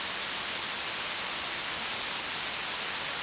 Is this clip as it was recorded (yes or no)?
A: yes